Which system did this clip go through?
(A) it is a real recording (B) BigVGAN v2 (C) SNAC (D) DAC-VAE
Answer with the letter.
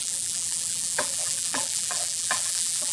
B